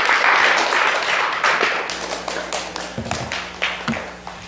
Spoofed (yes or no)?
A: no